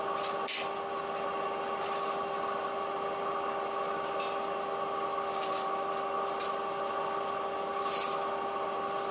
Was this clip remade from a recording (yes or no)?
no